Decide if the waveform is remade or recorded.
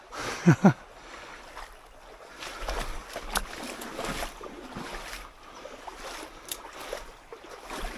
recorded